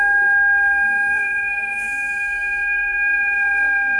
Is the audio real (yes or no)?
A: no